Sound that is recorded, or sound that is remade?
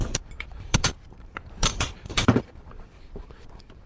remade